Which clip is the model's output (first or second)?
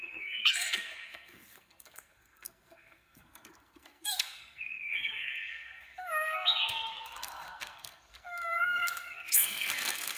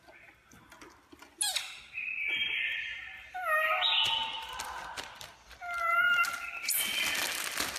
first